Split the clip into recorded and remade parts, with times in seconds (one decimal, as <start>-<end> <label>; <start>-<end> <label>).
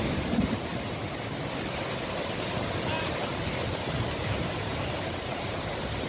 0.0-0.7 remade; 0.7-4.0 recorded; 4.0-6.1 remade